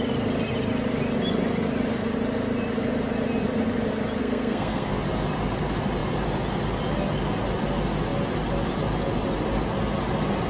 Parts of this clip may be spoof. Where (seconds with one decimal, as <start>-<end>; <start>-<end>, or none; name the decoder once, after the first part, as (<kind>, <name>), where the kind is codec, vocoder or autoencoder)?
4.2-4.9 (codec, SNAC)